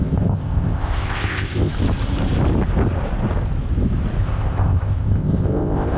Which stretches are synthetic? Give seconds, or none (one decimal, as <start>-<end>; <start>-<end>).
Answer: 0.0-1.7; 4.2-6.0